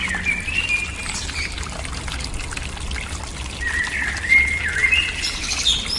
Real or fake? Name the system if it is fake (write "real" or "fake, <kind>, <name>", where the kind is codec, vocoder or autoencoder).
real